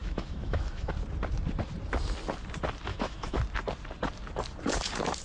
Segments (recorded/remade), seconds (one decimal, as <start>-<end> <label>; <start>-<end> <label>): 0.0-0.9 remade; 0.9-2.9 recorded; 2.9-3.4 remade; 3.4-5.2 recorded

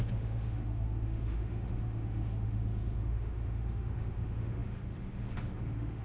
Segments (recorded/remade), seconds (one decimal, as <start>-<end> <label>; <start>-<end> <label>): 0.0-6.0 remade

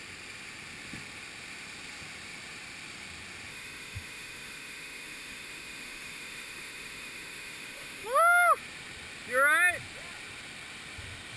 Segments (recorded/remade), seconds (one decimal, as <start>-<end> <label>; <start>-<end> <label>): 0.0-3.5 recorded; 3.5-8.6 remade; 8.6-11.4 recorded

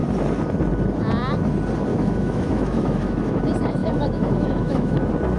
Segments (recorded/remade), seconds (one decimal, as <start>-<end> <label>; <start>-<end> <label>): 0.0-1.9 recorded; 1.9-3.4 remade; 3.4-3.8 recorded; 3.8-5.0 remade; 5.0-5.4 recorded

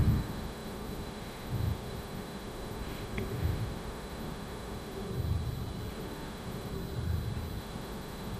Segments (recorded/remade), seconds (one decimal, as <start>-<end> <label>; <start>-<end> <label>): 0.0-5.1 remade; 5.1-5.9 recorded; 5.9-6.7 remade; 6.7-7.6 recorded; 7.6-8.4 remade

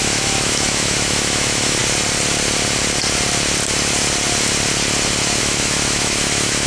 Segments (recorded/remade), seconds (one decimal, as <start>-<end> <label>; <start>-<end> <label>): 0.0-1.8 remade; 1.8-5.4 recorded; 5.4-6.7 remade

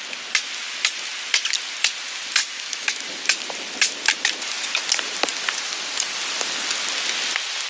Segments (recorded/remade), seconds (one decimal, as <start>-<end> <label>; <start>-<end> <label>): 0.0-2.4 recorded; 2.4-3.1 remade; 3.1-7.7 recorded